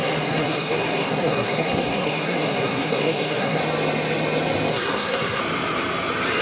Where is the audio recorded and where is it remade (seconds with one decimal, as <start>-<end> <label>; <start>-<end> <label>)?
0.0-3.6 remade; 3.6-4.7 recorded; 4.7-5.4 remade; 5.4-6.4 recorded